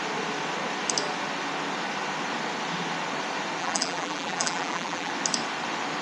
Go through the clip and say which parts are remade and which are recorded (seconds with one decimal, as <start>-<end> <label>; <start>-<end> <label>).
0.0-3.6 recorded; 3.6-5.1 remade; 5.1-6.0 recorded